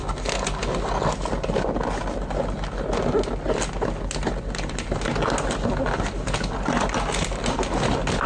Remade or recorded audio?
recorded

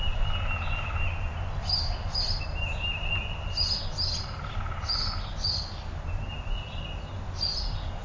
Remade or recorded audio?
recorded